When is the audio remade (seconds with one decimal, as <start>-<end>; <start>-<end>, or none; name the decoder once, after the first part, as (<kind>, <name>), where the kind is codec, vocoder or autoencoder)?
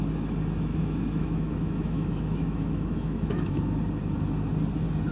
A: 0.7-3.8 (autoencoder, DAC-VAE)